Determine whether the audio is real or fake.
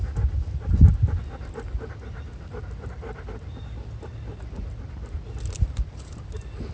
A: real